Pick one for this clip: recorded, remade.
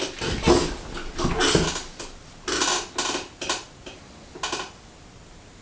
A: recorded